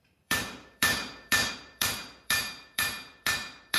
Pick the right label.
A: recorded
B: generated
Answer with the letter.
B